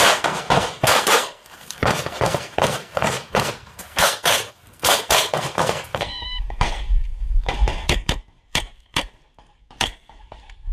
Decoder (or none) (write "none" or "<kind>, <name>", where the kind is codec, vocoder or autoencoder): codec, SNAC